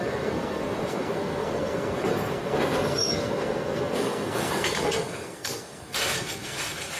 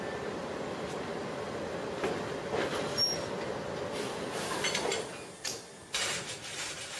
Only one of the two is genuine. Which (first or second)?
second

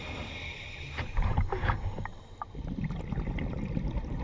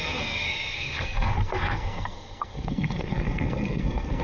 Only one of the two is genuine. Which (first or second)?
first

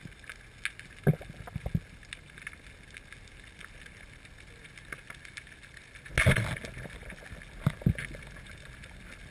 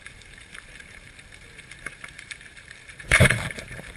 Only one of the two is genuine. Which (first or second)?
first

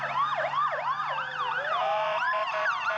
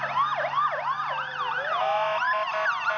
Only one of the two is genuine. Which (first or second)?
second